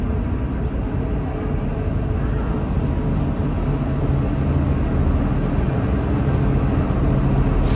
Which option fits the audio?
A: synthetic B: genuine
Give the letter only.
B